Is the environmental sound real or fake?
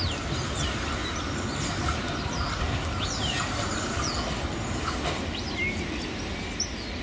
real